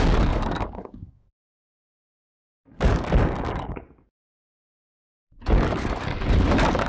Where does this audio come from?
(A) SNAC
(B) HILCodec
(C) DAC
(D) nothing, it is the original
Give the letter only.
C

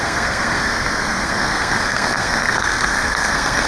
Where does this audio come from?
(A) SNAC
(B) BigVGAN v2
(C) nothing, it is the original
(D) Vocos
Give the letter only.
A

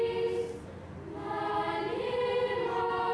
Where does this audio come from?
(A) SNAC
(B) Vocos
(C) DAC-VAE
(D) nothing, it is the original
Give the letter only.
D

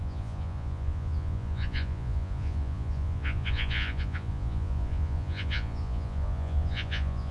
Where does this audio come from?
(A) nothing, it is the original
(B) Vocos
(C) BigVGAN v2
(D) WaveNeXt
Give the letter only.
B